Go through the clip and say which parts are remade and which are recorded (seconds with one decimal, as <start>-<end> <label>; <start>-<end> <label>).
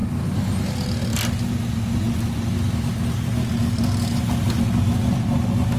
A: 0.0-5.8 recorded